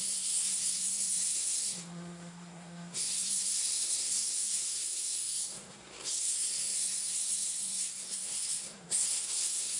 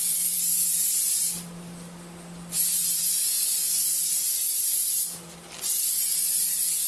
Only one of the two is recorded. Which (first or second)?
second